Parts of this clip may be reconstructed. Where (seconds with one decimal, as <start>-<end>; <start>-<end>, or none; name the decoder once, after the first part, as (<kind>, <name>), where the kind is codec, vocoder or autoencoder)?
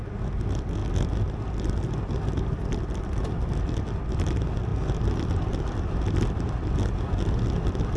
none